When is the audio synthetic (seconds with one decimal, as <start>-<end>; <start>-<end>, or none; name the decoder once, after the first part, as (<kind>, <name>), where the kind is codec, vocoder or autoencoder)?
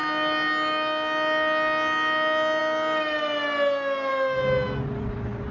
none